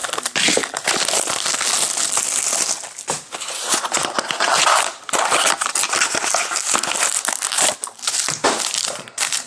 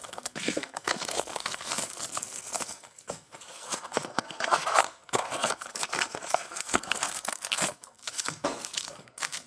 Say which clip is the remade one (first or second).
second